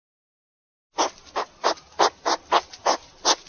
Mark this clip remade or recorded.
recorded